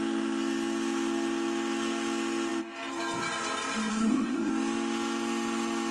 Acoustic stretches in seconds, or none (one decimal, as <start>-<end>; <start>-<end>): 0.0-3.9; 4.5-5.9